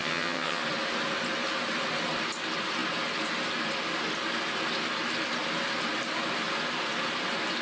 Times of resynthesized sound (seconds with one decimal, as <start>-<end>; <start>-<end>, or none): 0.0-0.6